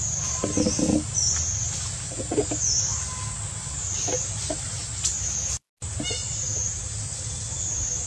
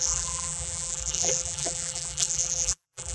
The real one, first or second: first